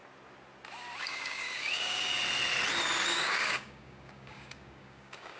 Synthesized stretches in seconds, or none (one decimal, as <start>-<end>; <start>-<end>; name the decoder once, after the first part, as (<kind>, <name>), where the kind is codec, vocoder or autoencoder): 1.0-2.2 (codec, DAC); 3.1-5.4